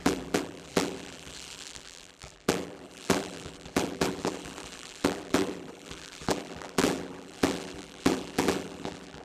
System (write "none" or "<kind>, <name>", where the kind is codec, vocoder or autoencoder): vocoder, BigVGAN v2